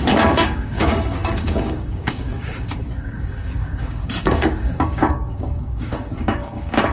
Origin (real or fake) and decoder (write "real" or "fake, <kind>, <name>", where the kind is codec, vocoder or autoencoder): fake, codec, DAC